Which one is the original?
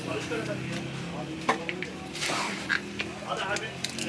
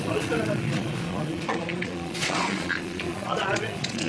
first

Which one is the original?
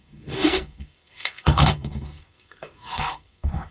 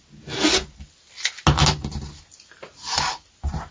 second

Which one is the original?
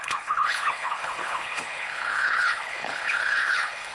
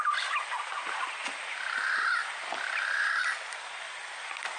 second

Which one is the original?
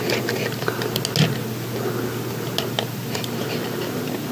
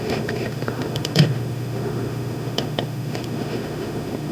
first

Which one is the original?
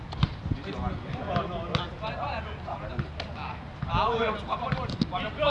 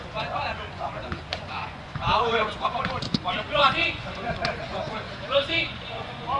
first